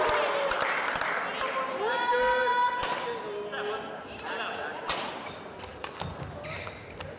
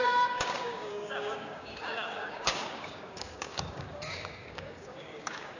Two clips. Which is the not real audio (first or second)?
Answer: second